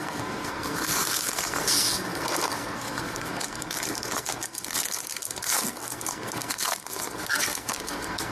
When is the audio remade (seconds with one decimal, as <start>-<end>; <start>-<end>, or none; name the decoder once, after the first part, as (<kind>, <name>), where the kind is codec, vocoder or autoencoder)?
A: 0.0-8.3 (codec, SNAC)

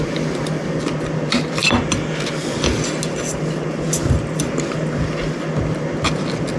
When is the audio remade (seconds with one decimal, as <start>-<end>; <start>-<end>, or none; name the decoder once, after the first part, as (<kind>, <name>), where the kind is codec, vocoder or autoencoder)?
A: none

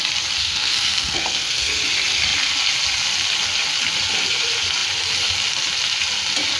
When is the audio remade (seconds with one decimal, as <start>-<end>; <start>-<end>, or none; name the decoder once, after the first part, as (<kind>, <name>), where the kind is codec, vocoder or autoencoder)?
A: 0.4-1.8 (codec, SNAC)

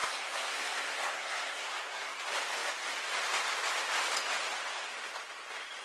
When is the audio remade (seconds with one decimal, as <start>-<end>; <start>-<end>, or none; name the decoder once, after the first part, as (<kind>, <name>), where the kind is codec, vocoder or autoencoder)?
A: 0.0-2.2 (codec, SNAC)

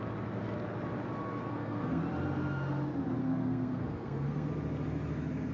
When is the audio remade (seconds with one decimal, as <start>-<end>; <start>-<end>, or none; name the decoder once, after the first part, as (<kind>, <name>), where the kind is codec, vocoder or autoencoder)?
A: 1.4-2.0 (codec, SNAC); 3.2-4.5

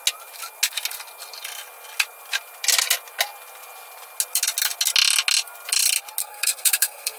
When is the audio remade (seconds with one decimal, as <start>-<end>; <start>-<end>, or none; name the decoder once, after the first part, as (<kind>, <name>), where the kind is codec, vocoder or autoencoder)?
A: 6.2-7.2 (codec, SNAC)

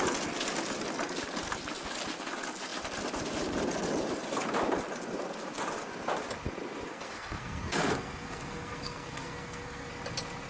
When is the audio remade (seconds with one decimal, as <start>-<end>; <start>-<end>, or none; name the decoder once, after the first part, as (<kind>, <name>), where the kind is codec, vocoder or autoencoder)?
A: 6.9-9.9 (codec, SNAC)

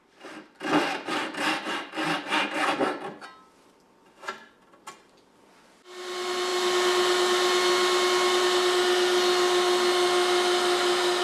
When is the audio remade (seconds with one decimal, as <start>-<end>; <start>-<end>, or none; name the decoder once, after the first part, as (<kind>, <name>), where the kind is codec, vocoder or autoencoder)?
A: none